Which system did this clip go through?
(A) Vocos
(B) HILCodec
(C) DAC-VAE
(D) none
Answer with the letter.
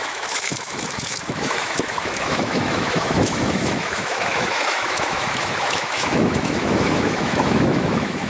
C